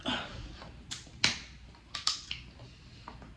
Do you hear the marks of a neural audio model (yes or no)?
no